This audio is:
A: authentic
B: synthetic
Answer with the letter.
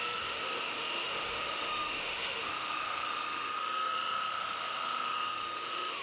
B